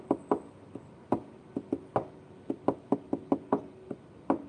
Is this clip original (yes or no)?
yes